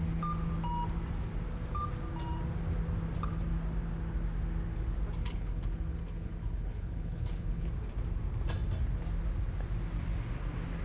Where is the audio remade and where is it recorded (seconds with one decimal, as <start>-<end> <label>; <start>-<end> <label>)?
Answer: 0.0-5.2 recorded; 5.2-7.7 remade; 7.7-10.8 recorded